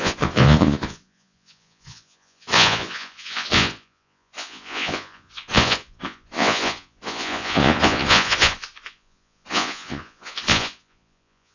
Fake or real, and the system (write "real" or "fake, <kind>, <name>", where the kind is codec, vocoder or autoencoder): fake, vocoder, Vocos